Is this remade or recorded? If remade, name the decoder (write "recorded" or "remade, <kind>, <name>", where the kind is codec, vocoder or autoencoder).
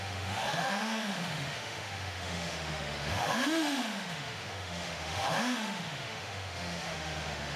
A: remade, autoencoder, DAC-VAE